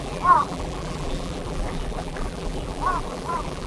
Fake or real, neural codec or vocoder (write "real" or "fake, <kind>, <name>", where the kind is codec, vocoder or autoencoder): fake, vocoder, BigVGAN v2